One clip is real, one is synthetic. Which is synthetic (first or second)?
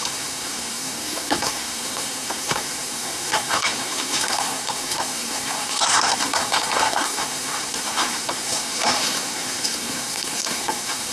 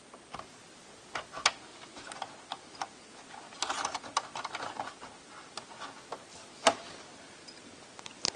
first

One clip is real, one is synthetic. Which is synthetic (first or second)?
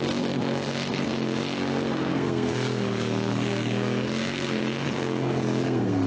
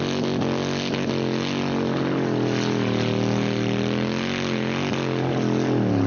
first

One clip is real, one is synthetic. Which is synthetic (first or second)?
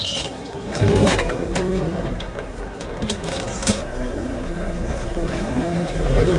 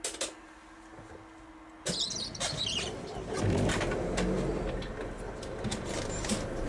first